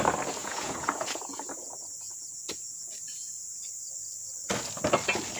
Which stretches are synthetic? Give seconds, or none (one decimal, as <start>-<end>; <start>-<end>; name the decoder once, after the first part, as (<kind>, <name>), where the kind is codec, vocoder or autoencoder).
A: 0.4-3.6 (vocoder, Vocos)